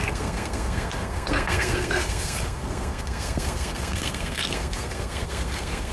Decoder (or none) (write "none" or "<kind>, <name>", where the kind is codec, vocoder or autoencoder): codec, SNAC